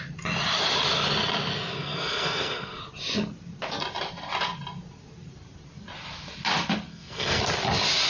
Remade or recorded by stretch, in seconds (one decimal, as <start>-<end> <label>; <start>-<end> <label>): 0.0-1.8 recorded; 1.8-2.8 remade; 2.8-6.9 recorded; 6.9-7.4 remade; 7.4-8.1 recorded

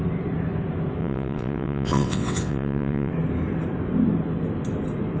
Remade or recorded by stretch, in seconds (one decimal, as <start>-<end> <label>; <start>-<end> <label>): 0.0-1.0 recorded; 1.0-3.1 remade; 3.1-5.2 recorded